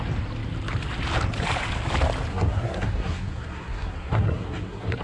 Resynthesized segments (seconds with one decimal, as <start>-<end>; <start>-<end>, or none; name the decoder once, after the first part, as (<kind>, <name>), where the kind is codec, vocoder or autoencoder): 2.3-5.0 (codec, SNAC)